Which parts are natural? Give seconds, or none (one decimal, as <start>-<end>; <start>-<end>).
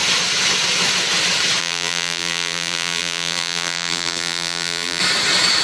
0.0-1.6; 5.0-5.6